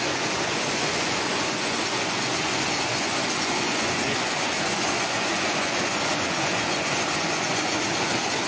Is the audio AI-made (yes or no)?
yes